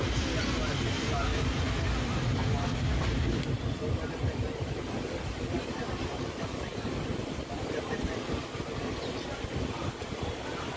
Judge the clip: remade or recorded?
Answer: recorded